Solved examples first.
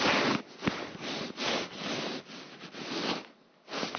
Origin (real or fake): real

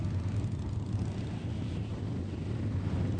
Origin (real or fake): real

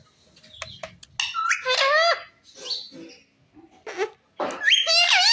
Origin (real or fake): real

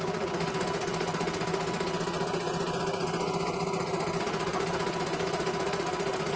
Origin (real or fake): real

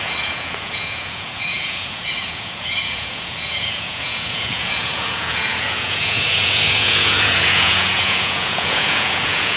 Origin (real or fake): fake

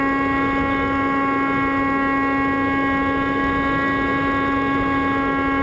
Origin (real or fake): real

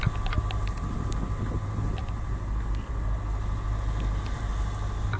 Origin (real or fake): real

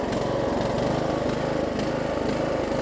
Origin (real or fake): real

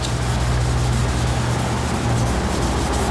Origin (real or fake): real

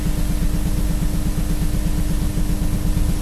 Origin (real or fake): real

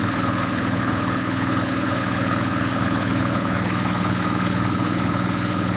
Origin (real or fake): fake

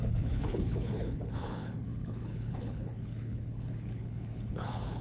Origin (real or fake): fake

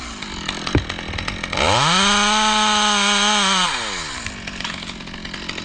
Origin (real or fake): real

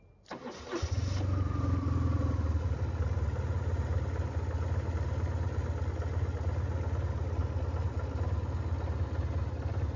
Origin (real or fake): real